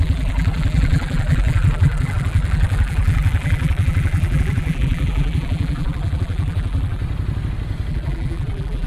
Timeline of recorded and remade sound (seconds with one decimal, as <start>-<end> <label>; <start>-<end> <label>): 0.0-7.0 remade; 7.0-7.9 recorded; 7.9-8.9 remade